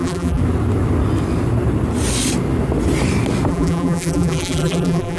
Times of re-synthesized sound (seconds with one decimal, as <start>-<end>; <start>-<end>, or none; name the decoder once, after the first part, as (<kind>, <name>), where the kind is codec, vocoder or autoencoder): 0.0-0.4 (vocoder, BigVGAN v2); 3.5-5.2